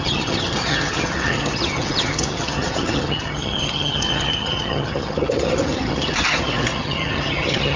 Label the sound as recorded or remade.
remade